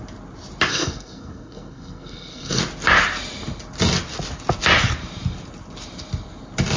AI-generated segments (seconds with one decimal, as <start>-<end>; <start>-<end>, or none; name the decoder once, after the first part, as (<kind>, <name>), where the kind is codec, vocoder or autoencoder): 0.7-2.6 (codec, SNAC)